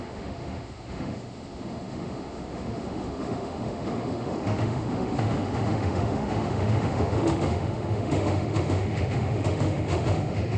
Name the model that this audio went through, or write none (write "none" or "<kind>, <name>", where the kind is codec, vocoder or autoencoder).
autoencoder, DAC-VAE